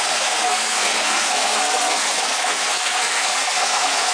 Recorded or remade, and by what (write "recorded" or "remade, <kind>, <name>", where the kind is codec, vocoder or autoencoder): remade, codec, SNAC